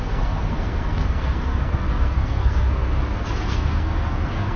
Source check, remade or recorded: remade